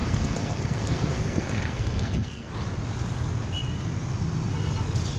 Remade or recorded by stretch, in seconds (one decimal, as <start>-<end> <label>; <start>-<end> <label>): 0.0-2.5 remade; 2.5-5.2 recorded

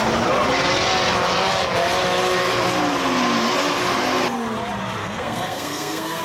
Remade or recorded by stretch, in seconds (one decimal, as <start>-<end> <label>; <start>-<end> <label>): 0.0-5.0 recorded; 5.0-6.2 remade

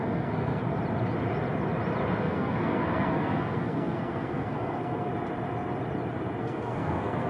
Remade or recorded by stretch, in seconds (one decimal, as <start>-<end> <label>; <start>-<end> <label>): 0.0-0.6 remade; 0.6-2.2 recorded; 2.2-5.1 remade; 5.1-6.4 recorded; 6.4-7.3 remade

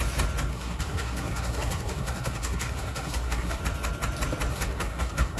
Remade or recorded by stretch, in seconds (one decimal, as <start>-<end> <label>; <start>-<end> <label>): 0.0-0.5 recorded; 0.5-3.6 remade; 3.6-4.5 recorded; 4.5-5.4 remade

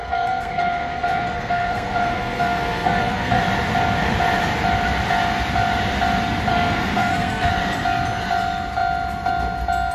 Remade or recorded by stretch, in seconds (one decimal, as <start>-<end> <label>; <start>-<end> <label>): 0.0-3.4 remade; 3.4-6.5 recorded; 6.5-7.5 remade; 7.5-9.9 recorded

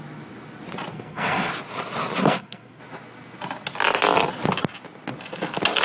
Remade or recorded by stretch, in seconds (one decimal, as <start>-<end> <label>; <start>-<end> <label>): 0.0-0.9 recorded; 0.9-1.5 remade; 1.5-2.2 recorded; 2.2-2.8 remade; 2.8-5.8 recorded

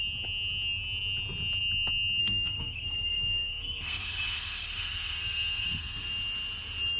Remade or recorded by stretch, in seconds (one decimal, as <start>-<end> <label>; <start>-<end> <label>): 0.0-2.2 recorded; 2.2-6.1 remade; 6.1-7.0 recorded

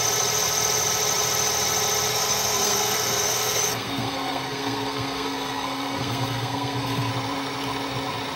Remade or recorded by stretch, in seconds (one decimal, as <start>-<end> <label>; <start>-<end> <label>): 0.0-2.1 recorded; 2.1-7.1 remade; 7.1-8.4 recorded